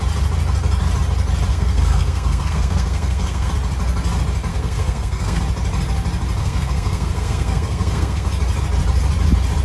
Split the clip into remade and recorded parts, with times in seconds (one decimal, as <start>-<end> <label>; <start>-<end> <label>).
0.0-1.5 recorded; 1.5-3.5 remade; 3.5-4.5 recorded; 4.5-5.4 remade; 5.4-6.4 recorded; 6.4-8.3 remade; 8.3-9.6 recorded